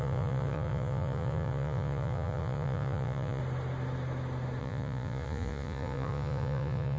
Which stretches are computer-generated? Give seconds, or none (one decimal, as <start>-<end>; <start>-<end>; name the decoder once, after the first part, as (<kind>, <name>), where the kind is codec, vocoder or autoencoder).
0.0-3.4 (vocoder, Vocos); 4.6-7.0